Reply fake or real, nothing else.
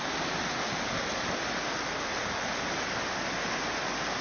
real